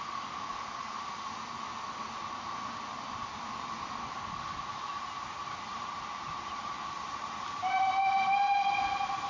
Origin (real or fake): real